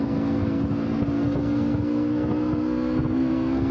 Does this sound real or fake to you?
fake